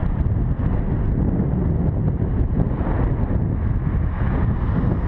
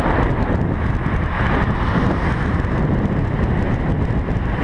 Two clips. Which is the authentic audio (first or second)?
first